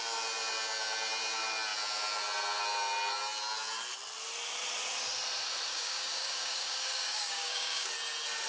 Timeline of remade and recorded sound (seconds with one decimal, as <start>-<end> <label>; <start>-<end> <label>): 0.0-5.7 recorded; 5.7-7.9 remade; 7.9-8.5 recorded